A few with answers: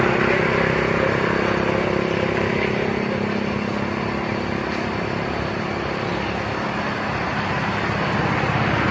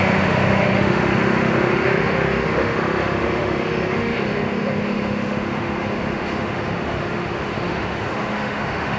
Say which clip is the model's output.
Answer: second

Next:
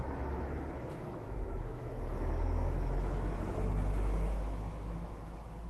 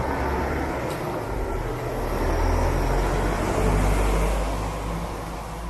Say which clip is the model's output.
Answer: first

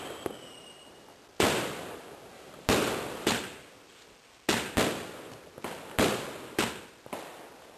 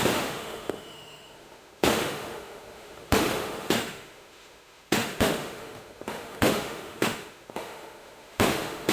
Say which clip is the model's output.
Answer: second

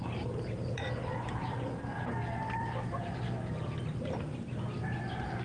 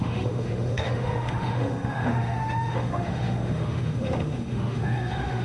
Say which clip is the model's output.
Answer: second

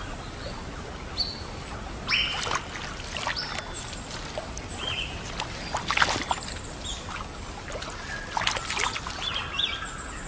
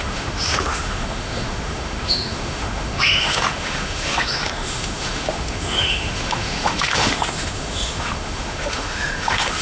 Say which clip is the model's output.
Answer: second